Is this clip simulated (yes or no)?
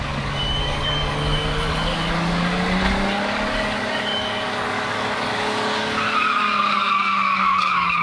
yes